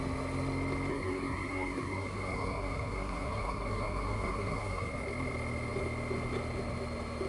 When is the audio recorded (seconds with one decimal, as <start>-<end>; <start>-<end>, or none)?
0.0-0.9; 4.9-7.3